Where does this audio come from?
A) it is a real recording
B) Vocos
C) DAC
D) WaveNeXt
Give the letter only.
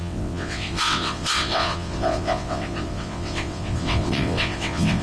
D